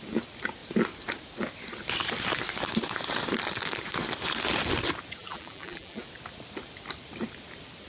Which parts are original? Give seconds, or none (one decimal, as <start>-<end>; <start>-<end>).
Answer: 0.0-5.2; 6.0-7.9